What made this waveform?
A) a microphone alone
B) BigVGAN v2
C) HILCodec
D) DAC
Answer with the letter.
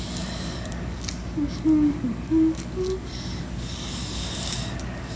D